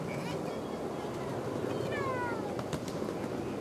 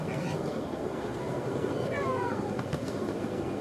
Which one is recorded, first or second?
first